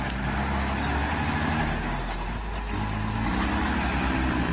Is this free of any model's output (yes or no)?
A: yes